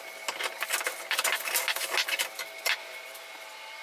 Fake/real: real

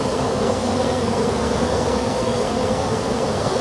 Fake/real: fake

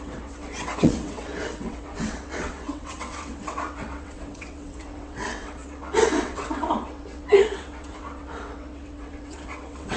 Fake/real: fake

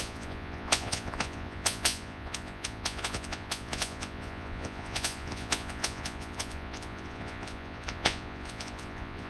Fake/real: fake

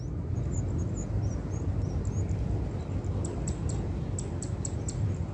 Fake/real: real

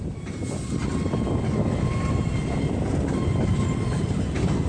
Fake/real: real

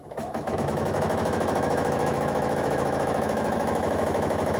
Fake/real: fake